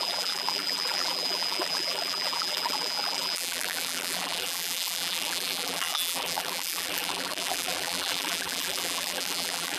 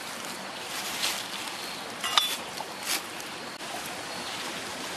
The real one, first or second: second